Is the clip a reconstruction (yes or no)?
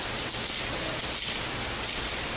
no